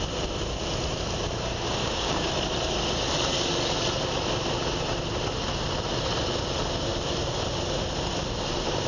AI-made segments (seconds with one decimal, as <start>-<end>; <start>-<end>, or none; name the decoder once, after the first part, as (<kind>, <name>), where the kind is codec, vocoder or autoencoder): 1.8-2.3 (codec, DAC)